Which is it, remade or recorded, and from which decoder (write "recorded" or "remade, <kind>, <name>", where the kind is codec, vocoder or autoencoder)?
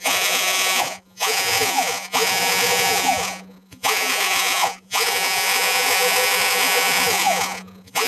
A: remade, vocoder, Vocos